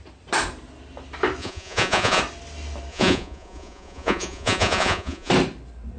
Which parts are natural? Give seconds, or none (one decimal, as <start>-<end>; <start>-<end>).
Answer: 0.0-1.4; 2.2-2.9; 5.3-6.0